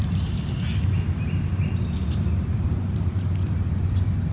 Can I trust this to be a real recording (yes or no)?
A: yes